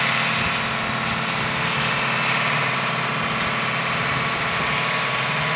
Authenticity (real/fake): real